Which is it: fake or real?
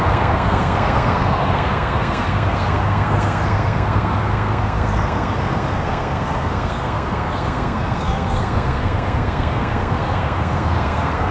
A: fake